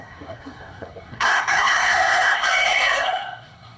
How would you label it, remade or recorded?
remade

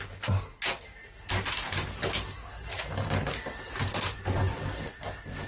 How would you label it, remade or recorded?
recorded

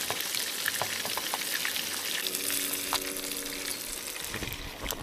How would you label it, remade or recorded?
recorded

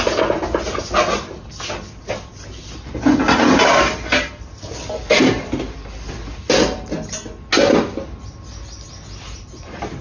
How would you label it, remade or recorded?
recorded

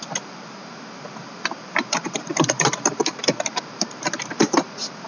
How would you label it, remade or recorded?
remade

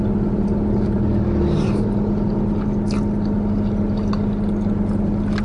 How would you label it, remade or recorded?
recorded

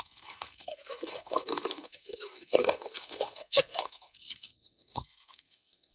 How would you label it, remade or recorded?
remade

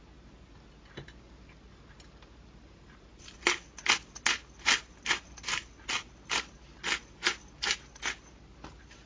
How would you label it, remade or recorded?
recorded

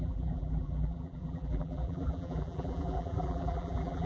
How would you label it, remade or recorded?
remade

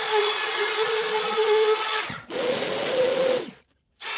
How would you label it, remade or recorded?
remade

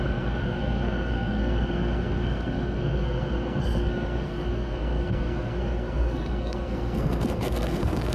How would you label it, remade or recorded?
remade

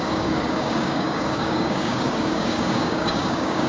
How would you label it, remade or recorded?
remade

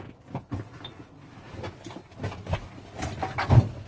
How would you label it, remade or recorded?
recorded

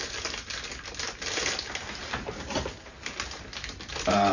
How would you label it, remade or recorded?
recorded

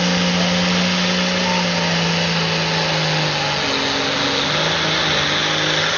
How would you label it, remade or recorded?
recorded